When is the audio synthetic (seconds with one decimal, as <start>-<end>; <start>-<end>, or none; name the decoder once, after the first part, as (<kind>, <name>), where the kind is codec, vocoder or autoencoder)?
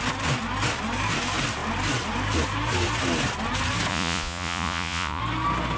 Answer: 3.9-5.2 (vocoder, Vocos)